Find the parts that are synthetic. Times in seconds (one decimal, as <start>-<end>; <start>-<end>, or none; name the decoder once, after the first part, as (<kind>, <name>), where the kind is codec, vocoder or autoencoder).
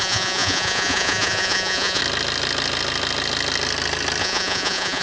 0.0-2.0 (vocoder, Vocos); 4.2-5.0